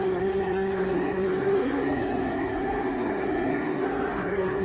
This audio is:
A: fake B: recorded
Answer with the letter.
A